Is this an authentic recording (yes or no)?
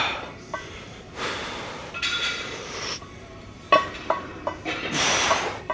no